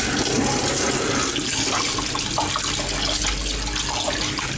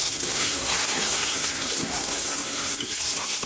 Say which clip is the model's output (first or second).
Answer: second